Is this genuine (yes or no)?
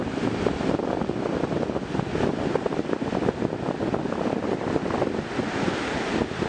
yes